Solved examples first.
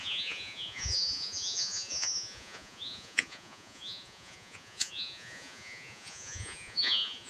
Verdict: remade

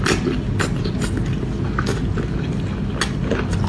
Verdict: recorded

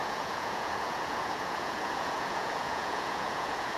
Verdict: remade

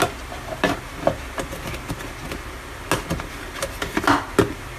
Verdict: recorded